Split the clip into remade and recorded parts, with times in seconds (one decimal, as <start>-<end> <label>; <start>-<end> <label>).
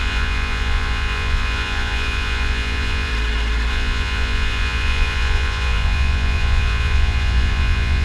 0.0-3.1 remade; 3.1-3.7 recorded; 3.7-8.0 remade